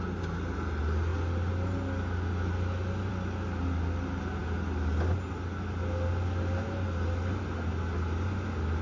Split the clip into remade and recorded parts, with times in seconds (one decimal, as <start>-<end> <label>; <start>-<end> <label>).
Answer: 0.0-8.8 recorded